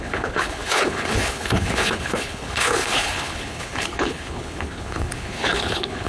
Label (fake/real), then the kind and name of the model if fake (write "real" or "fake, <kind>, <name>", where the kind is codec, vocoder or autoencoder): fake, codec, HILCodec